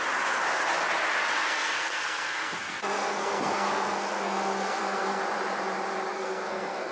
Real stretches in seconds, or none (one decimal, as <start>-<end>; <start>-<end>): 0.0-1.4; 5.2-6.1